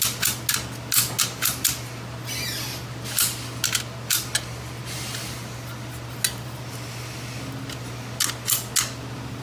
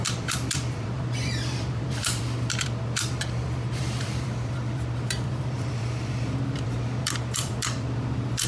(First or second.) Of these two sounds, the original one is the first